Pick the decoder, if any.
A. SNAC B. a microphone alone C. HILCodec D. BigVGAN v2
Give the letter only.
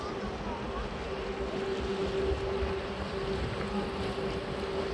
B